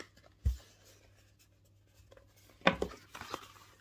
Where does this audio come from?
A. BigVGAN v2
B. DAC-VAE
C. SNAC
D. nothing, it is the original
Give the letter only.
D